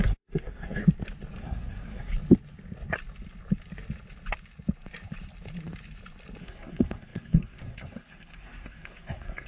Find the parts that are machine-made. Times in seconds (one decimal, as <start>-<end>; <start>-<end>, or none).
0.0-0.8; 1.4-2.1; 6.4-9.5